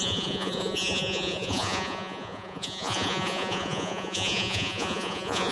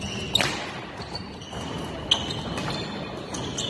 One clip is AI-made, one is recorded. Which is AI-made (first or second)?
first